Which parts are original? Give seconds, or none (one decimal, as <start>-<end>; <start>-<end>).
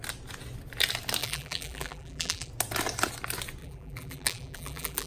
0.0-1.2; 2.5-3.6